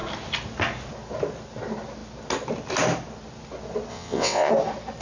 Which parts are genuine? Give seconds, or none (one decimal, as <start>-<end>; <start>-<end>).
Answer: 0.0-3.9; 4.5-5.0